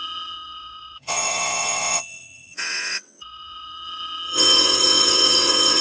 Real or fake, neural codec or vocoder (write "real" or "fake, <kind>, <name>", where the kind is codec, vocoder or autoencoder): fake, vocoder, WaveNeXt